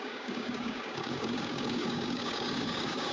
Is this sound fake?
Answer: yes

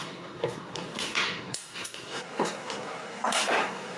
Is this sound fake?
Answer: yes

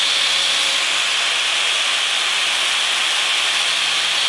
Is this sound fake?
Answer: no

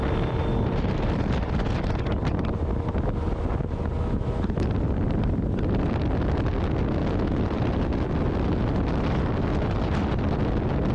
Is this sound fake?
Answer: no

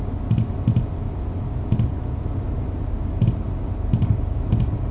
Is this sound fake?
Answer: no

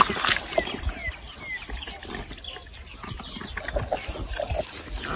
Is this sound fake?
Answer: no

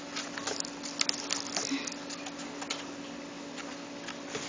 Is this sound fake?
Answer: no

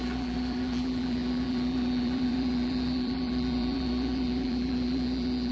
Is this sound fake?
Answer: yes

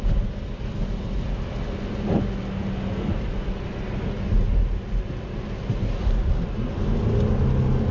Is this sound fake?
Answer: no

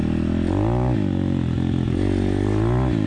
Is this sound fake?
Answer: no